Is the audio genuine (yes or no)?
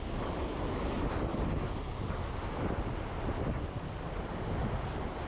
yes